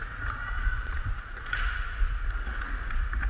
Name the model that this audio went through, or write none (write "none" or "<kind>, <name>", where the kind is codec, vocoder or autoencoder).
vocoder, Vocos